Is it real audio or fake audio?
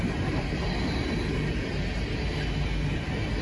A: real